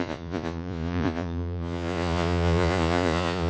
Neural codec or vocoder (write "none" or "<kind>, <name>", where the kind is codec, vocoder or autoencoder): vocoder, Vocos